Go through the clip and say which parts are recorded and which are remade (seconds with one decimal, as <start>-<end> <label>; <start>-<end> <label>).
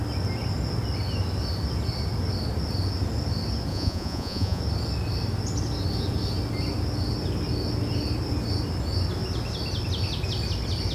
0.0-3.7 recorded; 3.7-4.6 remade; 4.6-10.9 recorded